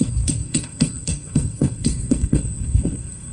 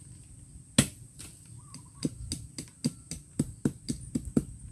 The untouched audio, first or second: second